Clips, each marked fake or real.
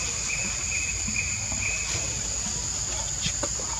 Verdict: real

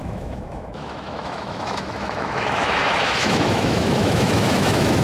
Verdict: fake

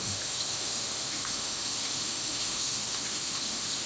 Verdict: fake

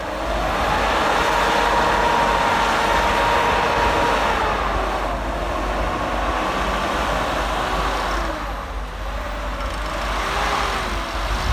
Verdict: real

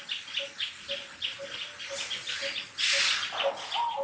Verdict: real